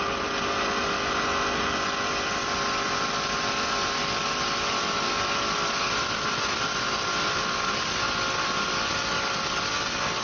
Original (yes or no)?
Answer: yes